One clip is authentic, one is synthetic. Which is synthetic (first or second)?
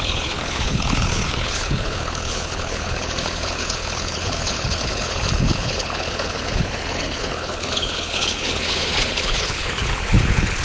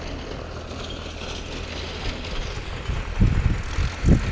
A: first